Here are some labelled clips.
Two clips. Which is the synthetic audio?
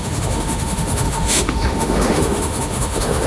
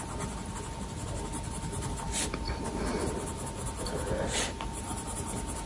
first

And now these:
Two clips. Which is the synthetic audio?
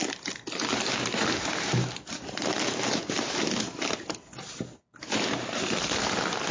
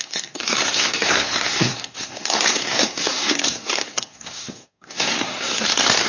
second